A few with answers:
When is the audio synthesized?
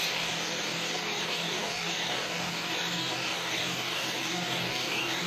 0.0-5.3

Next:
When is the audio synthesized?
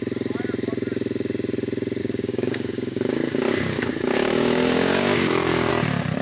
2.0-5.7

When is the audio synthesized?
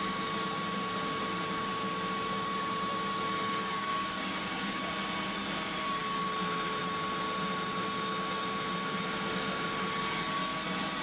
3.5-4.8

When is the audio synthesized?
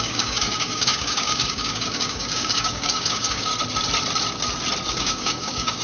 0.0-3.5; 4.9-5.8